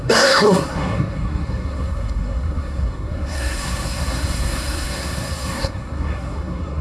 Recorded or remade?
remade